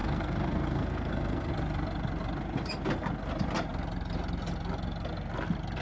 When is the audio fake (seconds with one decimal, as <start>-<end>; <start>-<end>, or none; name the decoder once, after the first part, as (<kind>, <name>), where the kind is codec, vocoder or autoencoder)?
0.0-1.5 (codec, SNAC)